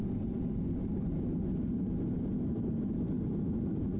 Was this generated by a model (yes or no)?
no